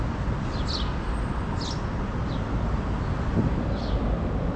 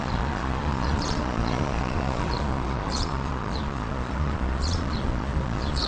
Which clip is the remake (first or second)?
second